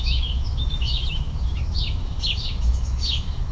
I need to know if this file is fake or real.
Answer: fake